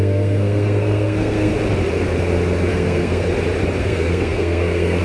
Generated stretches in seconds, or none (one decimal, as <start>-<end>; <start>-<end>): 0.0-1.5; 2.7-3.3; 3.8-5.0